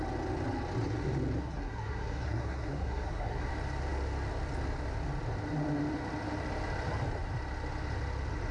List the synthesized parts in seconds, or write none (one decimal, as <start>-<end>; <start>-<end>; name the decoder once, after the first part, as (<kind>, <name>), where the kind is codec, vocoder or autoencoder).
1.4-3.5 (codec, SNAC)